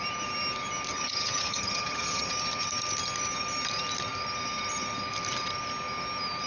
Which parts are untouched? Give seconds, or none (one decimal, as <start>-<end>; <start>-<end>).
0.0-0.9; 2.3-6.5